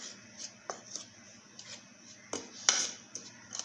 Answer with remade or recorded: recorded